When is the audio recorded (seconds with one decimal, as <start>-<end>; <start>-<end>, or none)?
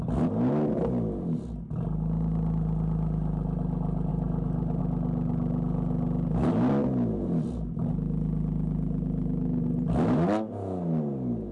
0.0-4.1; 4.8-11.5